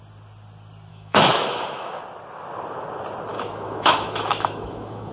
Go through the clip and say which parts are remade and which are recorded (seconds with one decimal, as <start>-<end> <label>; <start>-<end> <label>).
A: 0.0-0.9 recorded; 0.9-2.0 remade; 2.0-3.3 recorded; 3.3-5.1 remade